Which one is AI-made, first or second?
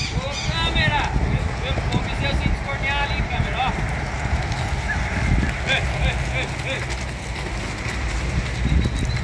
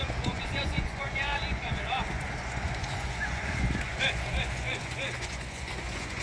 second